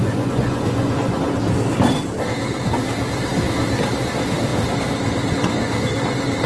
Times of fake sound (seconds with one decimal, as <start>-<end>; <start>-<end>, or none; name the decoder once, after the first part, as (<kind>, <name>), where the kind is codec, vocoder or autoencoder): 0.0-1.2 (vocoder, Vocos)